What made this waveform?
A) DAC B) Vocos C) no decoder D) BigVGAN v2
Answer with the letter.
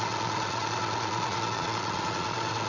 B